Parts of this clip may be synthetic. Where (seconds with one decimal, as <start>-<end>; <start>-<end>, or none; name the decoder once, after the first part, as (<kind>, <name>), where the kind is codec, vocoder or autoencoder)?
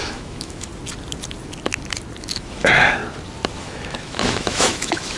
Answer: 0.0-0.7 (autoencoder, DAC-VAE); 2.2-3.0; 3.6-5.2